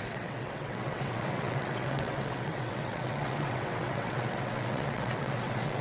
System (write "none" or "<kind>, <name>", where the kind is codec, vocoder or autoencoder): vocoder, WaveNeXt